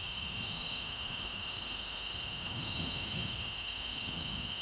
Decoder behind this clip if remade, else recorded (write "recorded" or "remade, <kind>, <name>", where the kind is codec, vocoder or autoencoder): remade, autoencoder, DAC-VAE